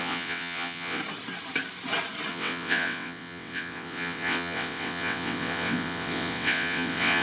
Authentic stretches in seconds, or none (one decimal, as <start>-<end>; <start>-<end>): 1.0-2.3